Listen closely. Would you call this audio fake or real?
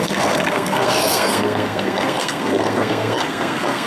fake